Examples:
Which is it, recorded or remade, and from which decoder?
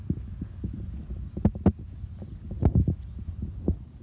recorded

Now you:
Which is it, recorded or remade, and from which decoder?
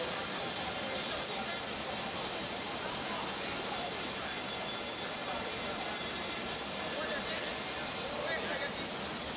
recorded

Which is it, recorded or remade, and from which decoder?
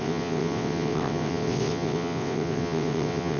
remade, vocoder, WaveNeXt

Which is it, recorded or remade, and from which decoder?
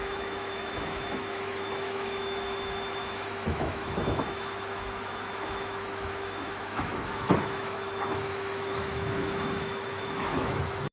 remade, autoencoder, DAC-VAE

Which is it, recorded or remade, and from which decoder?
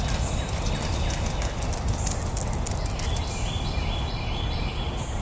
recorded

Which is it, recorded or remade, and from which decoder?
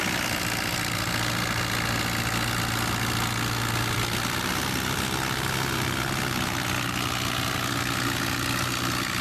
recorded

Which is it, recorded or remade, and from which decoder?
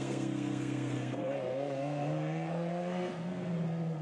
remade, codec, SNAC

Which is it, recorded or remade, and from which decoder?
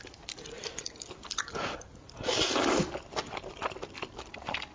recorded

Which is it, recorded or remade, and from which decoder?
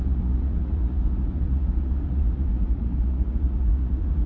remade, vocoder, Vocos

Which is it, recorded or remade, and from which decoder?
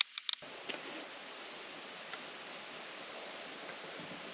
recorded